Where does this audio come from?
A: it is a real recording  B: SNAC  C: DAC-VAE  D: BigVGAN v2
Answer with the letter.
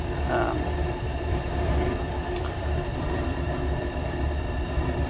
D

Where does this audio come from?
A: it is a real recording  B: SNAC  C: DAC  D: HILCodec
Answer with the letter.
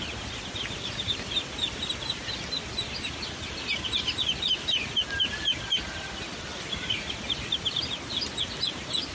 A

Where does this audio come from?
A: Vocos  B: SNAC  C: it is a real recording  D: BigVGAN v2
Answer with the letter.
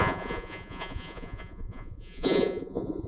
A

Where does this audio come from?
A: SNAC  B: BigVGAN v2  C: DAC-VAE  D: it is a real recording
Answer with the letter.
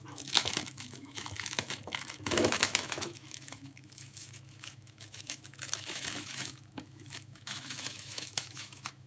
C